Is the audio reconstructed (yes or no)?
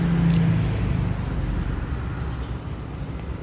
no